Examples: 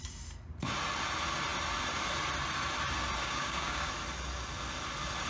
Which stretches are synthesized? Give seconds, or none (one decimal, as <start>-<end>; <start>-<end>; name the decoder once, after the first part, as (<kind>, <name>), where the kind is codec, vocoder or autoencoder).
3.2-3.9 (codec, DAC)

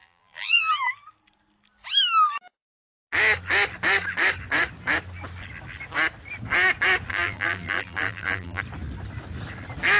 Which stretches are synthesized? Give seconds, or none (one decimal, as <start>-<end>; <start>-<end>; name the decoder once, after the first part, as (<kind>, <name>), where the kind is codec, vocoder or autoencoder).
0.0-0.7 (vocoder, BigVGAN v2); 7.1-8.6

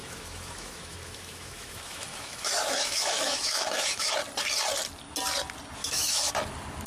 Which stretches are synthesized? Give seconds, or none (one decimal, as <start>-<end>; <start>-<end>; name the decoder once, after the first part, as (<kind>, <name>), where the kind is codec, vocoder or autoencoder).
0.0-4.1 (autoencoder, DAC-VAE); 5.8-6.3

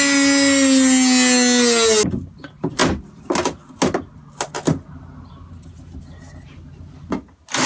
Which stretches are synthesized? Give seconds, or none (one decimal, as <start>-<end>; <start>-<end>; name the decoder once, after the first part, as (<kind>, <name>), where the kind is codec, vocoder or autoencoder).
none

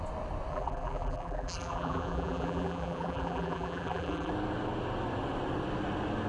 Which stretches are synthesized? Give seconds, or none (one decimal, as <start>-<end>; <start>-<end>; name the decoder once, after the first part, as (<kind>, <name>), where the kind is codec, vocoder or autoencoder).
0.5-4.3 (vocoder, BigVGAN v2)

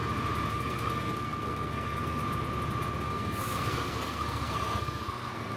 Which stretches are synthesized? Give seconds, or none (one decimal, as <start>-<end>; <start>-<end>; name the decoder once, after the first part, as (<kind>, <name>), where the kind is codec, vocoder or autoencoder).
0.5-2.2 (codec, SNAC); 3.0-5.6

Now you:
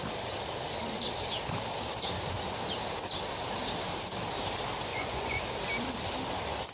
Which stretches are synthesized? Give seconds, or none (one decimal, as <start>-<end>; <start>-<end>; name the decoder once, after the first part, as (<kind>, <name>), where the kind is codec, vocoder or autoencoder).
4.9-5.4 (vocoder, Vocos)

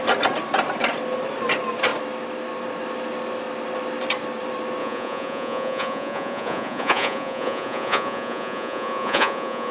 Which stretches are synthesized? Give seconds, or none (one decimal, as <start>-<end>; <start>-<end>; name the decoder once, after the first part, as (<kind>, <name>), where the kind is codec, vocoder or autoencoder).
4.8-9.7 (vocoder, Vocos)